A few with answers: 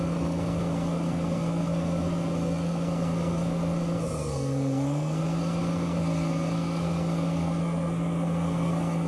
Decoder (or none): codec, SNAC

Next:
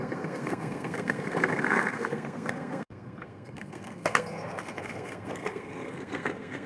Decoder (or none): codec, SNAC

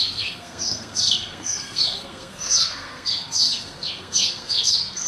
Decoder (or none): codec, SNAC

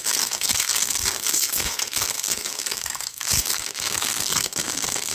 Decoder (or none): codec, SNAC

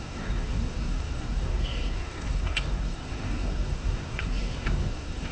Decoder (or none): codec, SNAC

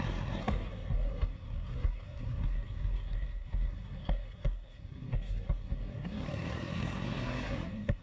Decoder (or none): codec, SNAC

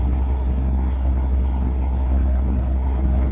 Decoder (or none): codec, SNAC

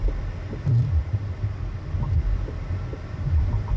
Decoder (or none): none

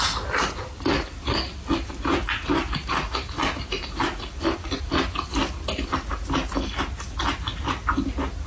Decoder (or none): none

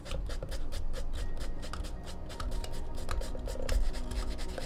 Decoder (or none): none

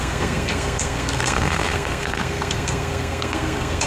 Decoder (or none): codec, SNAC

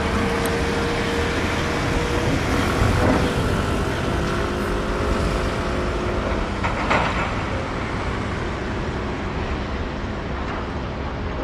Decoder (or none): none